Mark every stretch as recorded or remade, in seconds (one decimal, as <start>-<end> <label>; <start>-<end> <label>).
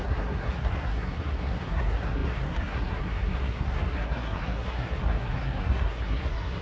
0.0-6.6 remade